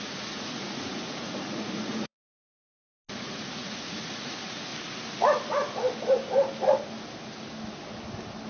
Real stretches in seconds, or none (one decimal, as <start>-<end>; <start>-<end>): 2.5-3.1; 4.7-8.5

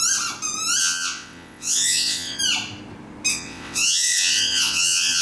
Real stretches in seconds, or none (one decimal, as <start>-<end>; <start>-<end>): 0.0-0.8; 2.4-3.3

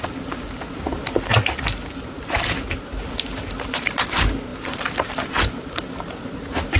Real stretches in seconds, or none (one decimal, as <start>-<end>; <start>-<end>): 0.0-6.8

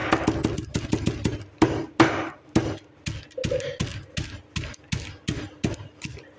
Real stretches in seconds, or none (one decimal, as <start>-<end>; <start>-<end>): 0.0-6.4